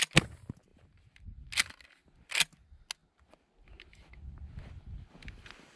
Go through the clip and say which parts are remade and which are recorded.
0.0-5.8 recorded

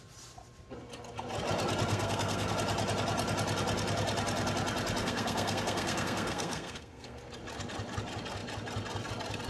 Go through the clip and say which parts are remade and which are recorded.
0.0-1.9 recorded; 1.9-2.5 remade; 2.5-5.0 recorded; 5.0-7.2 remade; 7.2-9.5 recorded

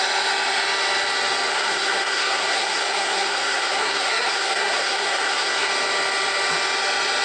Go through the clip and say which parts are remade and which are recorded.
0.0-1.5 recorded; 1.5-5.7 remade; 5.7-7.2 recorded

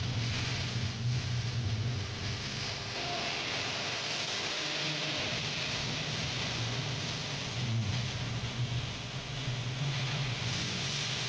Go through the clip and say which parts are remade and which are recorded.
0.0-2.2 remade; 2.2-6.3 recorded; 6.3-6.8 remade; 6.8-7.4 recorded; 7.4-11.3 remade

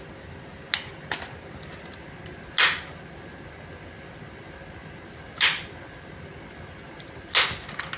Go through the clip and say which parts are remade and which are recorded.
0.0-8.0 recorded

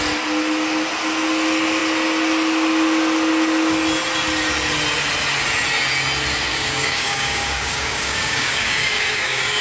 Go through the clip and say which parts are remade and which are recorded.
0.0-6.5 recorded; 6.5-9.6 remade